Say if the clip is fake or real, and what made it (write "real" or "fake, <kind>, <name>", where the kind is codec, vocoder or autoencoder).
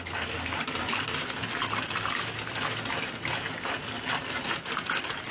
real